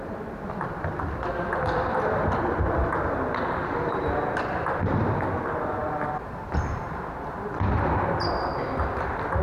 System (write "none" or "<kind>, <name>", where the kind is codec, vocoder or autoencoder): none